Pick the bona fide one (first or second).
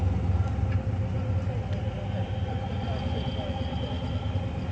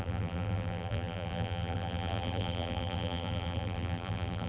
first